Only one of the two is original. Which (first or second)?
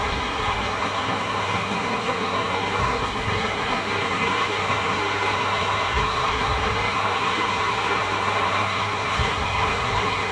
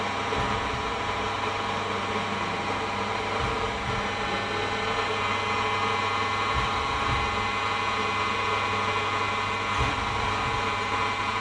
second